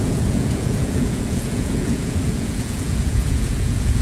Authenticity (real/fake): fake